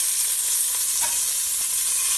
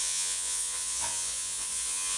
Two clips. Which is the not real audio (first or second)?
second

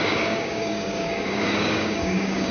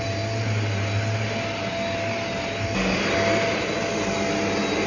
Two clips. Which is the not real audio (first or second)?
first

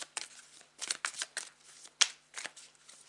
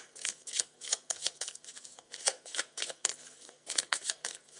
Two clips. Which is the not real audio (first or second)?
second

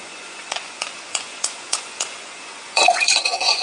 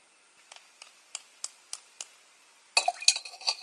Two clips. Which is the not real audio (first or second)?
first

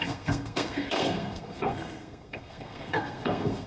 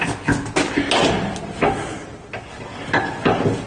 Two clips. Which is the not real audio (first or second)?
first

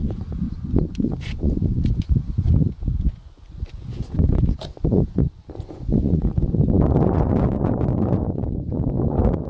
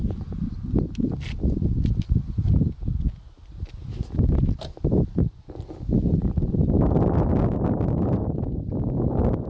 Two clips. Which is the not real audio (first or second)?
first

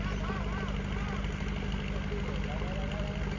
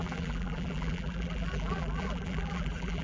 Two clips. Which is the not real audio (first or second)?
second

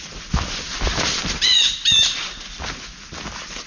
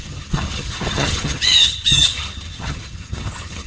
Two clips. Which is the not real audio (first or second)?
second